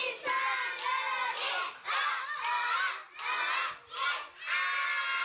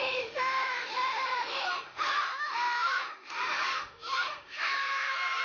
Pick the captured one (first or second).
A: first